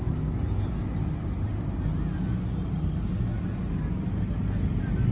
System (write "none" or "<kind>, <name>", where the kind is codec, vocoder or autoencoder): none